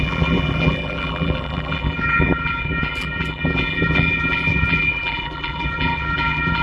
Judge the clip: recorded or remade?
remade